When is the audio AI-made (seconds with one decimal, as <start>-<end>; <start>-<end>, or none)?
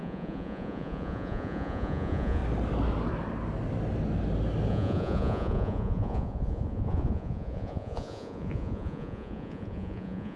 0.0-2.4; 4.7-10.4